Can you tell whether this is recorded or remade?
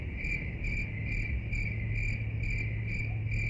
recorded